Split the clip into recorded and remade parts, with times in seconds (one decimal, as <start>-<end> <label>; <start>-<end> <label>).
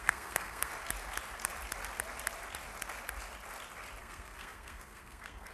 0.0-0.7 remade; 0.7-4.0 recorded; 4.0-5.5 remade